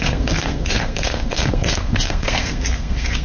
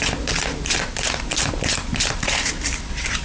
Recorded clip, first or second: second